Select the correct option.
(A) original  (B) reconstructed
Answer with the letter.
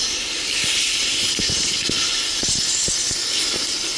A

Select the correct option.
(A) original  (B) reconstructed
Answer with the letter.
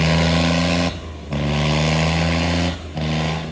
A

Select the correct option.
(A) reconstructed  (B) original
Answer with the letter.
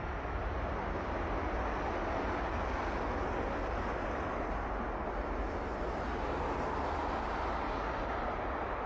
B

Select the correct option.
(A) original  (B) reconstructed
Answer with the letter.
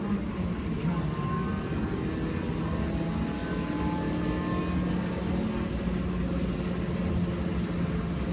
A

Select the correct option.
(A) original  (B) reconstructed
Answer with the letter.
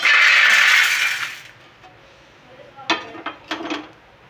A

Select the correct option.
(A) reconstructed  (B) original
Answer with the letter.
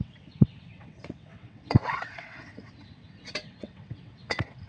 A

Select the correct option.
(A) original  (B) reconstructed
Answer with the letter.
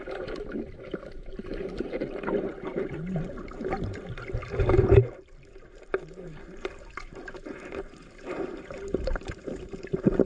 B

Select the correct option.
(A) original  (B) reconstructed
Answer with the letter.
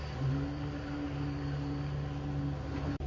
A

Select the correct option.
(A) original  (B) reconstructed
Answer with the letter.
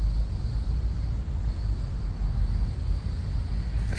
A